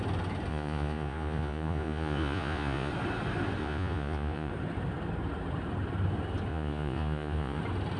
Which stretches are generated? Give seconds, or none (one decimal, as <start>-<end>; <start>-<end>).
0.5-2.9; 3.6-4.5; 6.5-7.6